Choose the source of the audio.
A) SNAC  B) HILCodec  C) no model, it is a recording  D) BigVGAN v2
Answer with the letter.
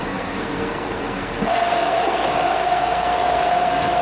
A